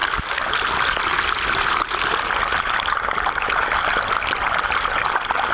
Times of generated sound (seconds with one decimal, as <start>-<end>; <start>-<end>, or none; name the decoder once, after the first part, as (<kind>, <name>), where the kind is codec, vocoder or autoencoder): none